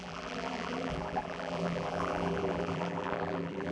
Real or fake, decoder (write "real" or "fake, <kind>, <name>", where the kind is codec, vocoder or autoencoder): fake, vocoder, BigVGAN v2